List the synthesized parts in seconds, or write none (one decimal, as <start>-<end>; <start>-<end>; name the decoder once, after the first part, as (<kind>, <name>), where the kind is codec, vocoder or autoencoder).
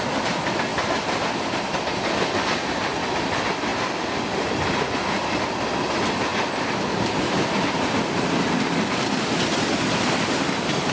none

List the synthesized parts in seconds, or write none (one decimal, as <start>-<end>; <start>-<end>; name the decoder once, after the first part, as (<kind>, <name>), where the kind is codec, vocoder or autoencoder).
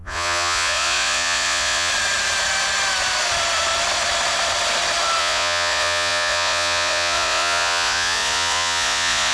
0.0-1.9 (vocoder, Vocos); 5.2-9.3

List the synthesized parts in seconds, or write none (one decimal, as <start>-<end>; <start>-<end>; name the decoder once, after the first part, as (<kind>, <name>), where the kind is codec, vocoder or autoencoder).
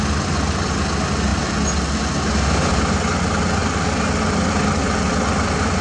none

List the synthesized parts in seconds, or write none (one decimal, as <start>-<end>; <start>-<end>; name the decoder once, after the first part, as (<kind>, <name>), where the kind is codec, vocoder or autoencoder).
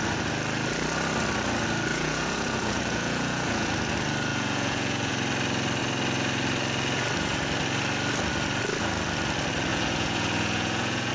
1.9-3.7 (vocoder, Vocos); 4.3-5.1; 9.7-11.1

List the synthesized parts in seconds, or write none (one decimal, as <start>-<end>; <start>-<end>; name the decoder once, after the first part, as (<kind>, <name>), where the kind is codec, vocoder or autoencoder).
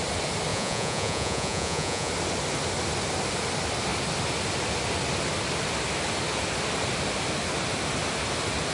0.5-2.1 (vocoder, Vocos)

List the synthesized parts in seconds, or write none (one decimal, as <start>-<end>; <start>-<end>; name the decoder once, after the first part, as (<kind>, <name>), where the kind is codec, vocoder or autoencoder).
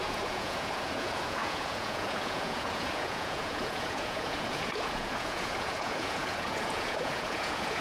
0.0-7.8 (vocoder, Vocos)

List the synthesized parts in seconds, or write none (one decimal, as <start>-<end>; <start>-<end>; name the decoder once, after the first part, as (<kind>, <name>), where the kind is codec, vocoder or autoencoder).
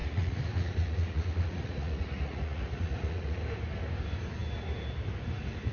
0.0-3.4 (vocoder, Vocos)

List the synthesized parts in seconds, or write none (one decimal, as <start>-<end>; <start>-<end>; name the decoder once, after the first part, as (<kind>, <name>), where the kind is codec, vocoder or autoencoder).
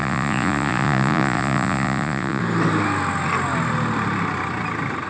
0.0-2.4 (vocoder, Vocos)